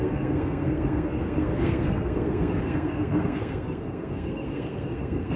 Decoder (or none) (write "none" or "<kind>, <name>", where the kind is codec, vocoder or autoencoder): codec, SNAC